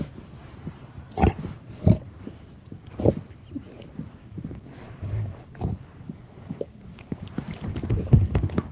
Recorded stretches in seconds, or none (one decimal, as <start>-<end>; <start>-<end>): 0.0-4.2; 7.2-7.7